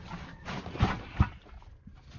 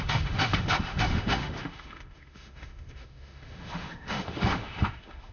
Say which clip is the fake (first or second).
second